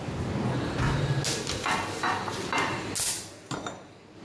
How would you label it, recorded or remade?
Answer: recorded